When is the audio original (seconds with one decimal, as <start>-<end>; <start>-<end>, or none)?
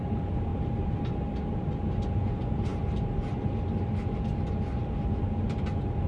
0.0-6.1